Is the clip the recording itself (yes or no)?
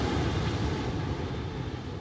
yes